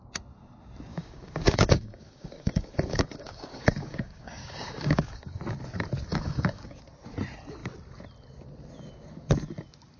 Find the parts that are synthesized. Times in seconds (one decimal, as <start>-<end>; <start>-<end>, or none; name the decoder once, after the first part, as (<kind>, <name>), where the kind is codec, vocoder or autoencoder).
0.9-5.4 (codec, DAC); 6.1-6.8